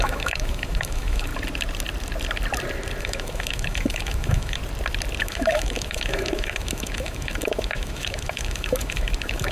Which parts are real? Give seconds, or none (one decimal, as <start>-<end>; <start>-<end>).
1.3-3.0; 4.6-5.2